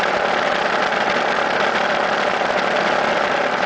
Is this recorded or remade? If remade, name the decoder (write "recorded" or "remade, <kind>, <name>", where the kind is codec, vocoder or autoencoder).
recorded